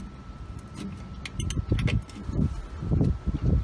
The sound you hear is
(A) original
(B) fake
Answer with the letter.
A